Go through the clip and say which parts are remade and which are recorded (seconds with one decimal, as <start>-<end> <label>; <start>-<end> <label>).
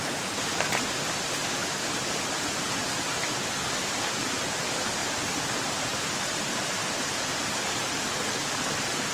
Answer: 0.0-5.0 remade; 5.0-5.5 recorded; 5.5-6.8 remade; 6.8-9.1 recorded